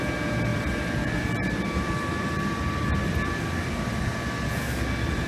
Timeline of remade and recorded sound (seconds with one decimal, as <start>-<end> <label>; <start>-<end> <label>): 0.0-0.5 recorded; 0.5-3.7 remade; 3.7-5.3 recorded